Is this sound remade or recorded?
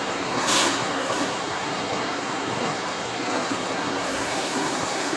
remade